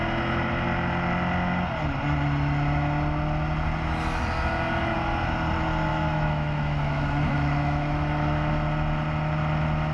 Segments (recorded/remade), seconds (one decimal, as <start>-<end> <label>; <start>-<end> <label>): 0.0-5.9 recorded; 5.9-8.5 remade; 8.5-9.9 recorded